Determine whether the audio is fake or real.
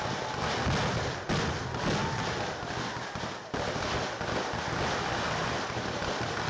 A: real